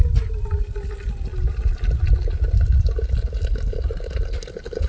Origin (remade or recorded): recorded